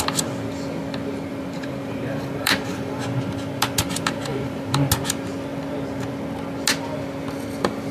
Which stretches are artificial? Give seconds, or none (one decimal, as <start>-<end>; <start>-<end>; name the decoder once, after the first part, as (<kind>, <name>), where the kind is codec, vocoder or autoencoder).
1.3-3.0 (vocoder, BigVGAN v2); 4.3-4.9